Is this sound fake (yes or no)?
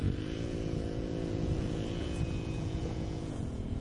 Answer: yes